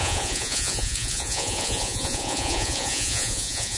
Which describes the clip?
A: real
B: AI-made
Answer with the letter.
B